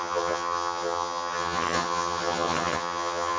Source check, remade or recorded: remade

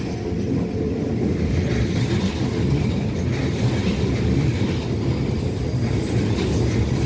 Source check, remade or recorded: recorded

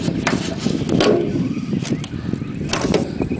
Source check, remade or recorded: recorded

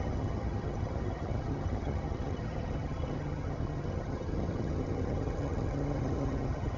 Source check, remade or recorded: remade